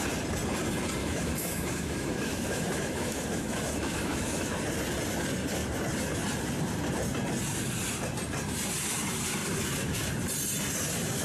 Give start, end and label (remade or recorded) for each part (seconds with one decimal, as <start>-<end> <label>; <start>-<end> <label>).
0.0-1.0 recorded; 1.0-4.6 remade; 4.6-11.2 recorded